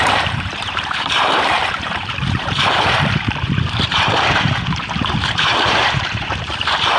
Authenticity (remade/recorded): remade